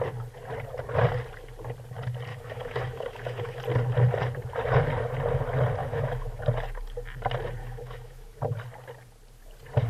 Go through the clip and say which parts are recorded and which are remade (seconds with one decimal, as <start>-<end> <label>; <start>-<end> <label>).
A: 0.0-2.3 recorded; 2.3-3.6 remade; 3.6-5.8 recorded; 5.8-6.4 remade; 6.4-7.6 recorded; 7.6-8.4 remade; 8.4-9.9 recorded